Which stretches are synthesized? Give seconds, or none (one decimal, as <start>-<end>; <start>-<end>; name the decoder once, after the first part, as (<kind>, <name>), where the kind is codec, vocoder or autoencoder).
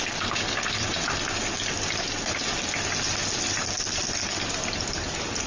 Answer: none